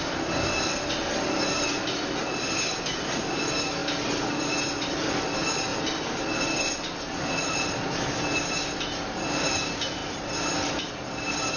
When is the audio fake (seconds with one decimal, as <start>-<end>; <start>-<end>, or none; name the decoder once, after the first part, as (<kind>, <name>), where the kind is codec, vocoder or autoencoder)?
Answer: none